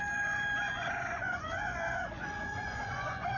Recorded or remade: remade